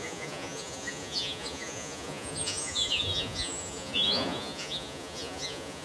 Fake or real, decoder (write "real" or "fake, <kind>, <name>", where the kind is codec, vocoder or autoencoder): fake, vocoder, Vocos